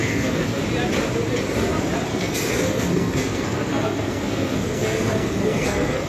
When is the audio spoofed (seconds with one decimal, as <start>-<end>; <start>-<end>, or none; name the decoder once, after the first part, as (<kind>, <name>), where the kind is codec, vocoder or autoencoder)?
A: 0.0-0.6 (codec, SNAC); 2.1-6.1